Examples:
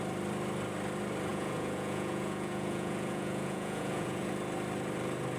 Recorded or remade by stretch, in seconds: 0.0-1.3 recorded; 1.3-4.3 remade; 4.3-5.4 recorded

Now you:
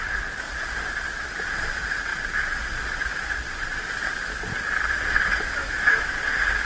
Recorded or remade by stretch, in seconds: 0.0-5.6 recorded; 5.6-6.1 remade; 6.1-6.6 recorded

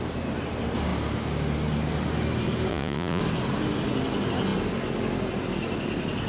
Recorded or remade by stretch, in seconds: 0.0-2.7 recorded; 2.7-3.2 remade; 3.2-6.3 recorded